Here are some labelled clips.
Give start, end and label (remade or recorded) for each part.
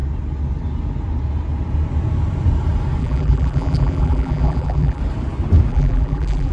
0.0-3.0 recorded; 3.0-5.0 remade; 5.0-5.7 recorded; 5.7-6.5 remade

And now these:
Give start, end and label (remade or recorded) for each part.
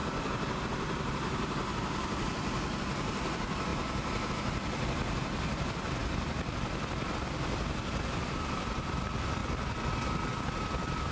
0.0-9.4 remade; 9.4-10.4 recorded; 10.4-11.1 remade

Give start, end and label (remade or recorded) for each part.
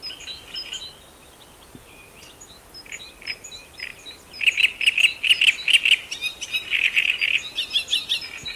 0.0-8.6 recorded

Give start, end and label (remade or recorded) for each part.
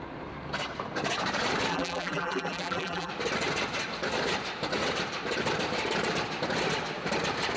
0.0-1.7 recorded; 1.7-3.1 remade; 3.1-7.6 recorded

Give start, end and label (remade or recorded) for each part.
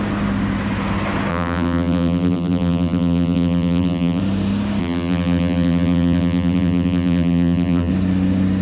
0.0-1.3 recorded; 1.3-4.2 remade; 4.2-4.8 recorded; 4.8-7.9 remade; 7.9-8.6 recorded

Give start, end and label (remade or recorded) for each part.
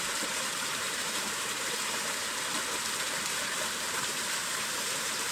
0.0-2.2 remade; 2.2-3.9 recorded; 3.9-5.3 remade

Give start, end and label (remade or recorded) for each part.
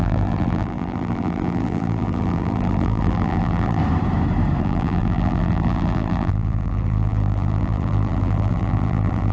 0.0-3.8 remade; 3.8-4.6 recorded; 4.6-9.3 remade